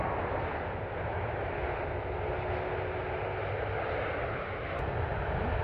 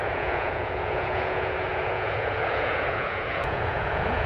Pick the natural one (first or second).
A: first